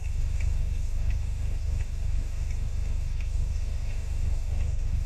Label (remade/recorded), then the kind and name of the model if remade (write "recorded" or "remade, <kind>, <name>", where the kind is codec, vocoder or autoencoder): remade, codec, DAC